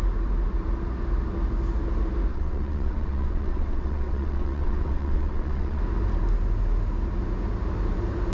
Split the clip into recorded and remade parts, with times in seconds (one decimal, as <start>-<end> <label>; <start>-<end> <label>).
0.0-2.3 recorded; 2.3-5.8 remade; 5.8-8.3 recorded